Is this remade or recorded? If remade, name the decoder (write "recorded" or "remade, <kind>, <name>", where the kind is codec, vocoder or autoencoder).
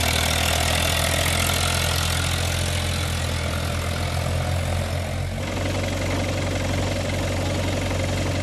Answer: recorded